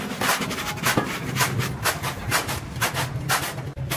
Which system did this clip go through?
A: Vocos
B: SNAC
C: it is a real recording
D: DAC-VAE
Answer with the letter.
C